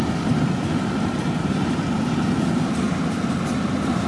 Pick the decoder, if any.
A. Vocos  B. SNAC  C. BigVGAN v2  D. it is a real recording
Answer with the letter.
D